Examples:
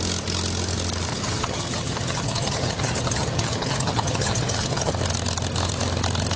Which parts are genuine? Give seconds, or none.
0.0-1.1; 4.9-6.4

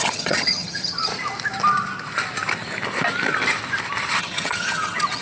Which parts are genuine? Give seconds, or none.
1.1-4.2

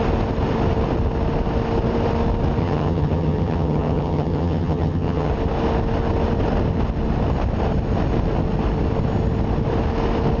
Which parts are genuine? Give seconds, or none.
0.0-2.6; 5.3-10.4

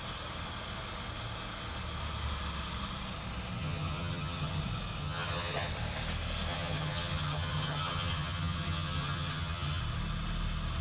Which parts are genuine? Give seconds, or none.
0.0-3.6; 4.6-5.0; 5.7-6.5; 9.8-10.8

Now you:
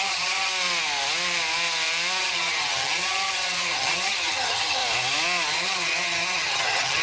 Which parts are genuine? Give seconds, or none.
0.5-2.2; 4.8-5.5

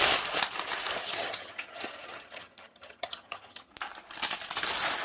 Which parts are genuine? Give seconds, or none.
0.0-1.0; 3.7-5.0